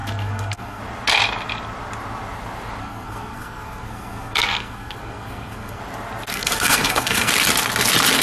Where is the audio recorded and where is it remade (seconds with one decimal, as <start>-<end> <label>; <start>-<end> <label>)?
0.0-0.8 remade; 0.8-2.8 recorded; 2.8-5.8 remade; 5.8-6.3 recorded; 6.3-7.3 remade; 7.3-8.2 recorded